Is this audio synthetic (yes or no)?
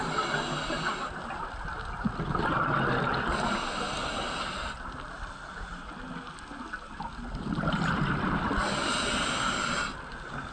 no